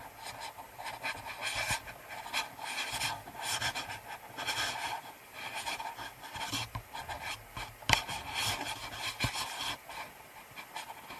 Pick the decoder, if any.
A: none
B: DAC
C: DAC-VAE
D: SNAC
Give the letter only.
A